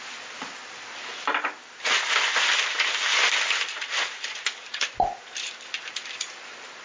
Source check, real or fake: real